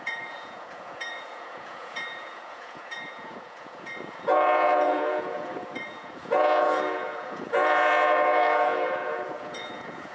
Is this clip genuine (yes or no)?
no